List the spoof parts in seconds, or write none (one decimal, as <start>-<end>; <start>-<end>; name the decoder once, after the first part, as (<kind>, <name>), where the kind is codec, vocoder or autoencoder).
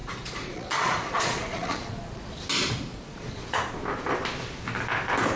0.0-2.3 (vocoder, Vocos); 2.9-3.7